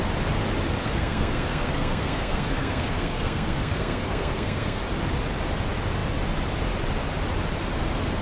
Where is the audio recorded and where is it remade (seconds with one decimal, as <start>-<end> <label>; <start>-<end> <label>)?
0.0-0.8 recorded; 0.8-4.8 remade; 4.8-8.2 recorded